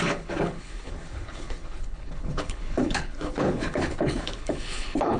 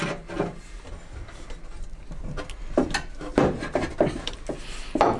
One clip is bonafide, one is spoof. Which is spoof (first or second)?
first